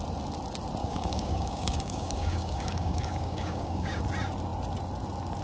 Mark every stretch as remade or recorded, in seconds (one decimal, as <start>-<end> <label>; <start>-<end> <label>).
0.0-0.8 recorded; 0.8-4.0 remade; 4.0-5.4 recorded